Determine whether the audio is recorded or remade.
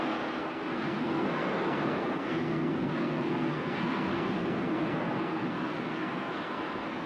remade